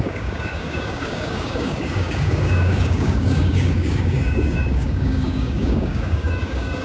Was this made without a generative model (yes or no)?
no